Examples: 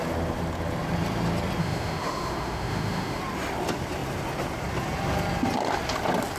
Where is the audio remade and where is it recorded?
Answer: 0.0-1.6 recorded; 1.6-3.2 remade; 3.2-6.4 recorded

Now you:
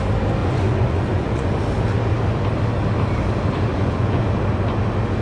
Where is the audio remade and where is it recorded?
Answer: 0.0-0.4 recorded; 0.4-1.6 remade; 1.6-3.7 recorded; 3.7-4.2 remade; 4.2-5.2 recorded

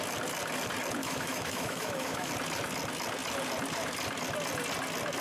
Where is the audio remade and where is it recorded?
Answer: 0.0-1.0 recorded; 1.0-2.3 remade; 2.3-5.2 recorded